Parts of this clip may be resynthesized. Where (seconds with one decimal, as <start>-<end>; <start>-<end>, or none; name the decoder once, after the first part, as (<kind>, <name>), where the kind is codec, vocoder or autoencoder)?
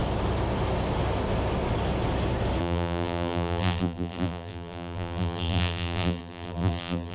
2.6-7.1 (vocoder, BigVGAN v2)